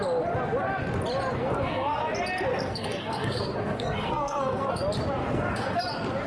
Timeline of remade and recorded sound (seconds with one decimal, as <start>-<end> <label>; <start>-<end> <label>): 0.0-1.3 recorded; 1.3-2.0 remade; 2.0-2.5 recorded; 2.5-4.8 remade; 4.8-5.2 recorded; 5.2-5.8 remade; 5.8-6.3 recorded